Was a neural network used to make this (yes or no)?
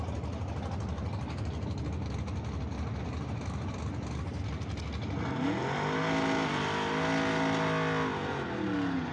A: no